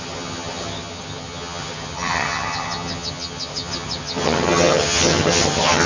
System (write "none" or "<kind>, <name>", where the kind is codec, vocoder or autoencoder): vocoder, HiFi-GAN